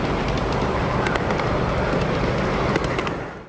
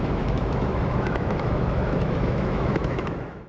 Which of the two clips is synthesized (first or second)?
second